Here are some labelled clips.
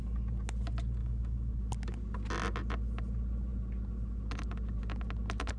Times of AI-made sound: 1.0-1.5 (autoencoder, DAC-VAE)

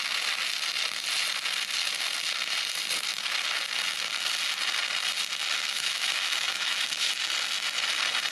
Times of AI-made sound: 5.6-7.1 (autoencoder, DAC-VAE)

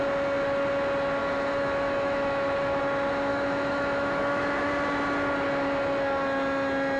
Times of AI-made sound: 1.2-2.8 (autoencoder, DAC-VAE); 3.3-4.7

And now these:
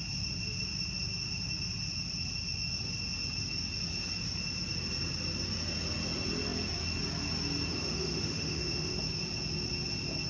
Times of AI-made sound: 7.7-8.9 (autoencoder, DAC-VAE)

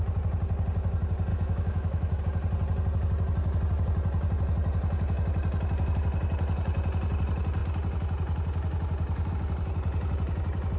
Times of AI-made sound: 1.3-2.2 (autoencoder, DAC-VAE)

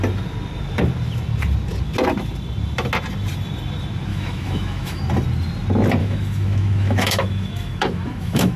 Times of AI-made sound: 4.1-5.0 (autoencoder, DAC-VAE); 6.0-8.6

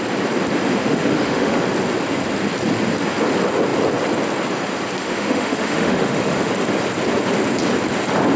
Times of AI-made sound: 0.8-1.6 (autoencoder, DAC-VAE); 5.0-6.5